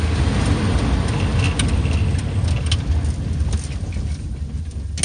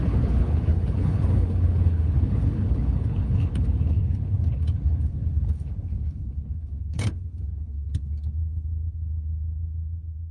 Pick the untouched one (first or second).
first